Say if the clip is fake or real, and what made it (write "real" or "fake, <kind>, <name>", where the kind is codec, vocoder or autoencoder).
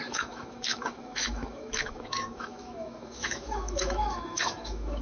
fake, autoencoder, DAC-VAE